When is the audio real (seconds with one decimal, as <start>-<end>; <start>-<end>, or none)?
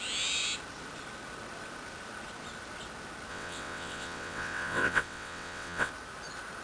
0.0-3.3; 5.9-6.6